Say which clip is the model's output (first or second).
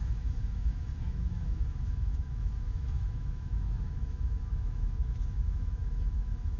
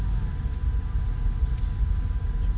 first